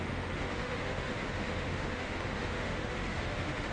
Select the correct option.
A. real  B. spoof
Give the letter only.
B